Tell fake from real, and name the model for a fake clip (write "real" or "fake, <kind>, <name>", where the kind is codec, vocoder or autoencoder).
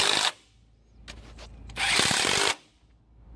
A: real